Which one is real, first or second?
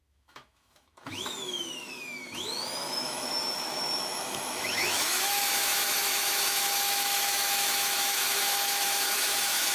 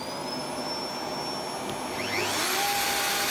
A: second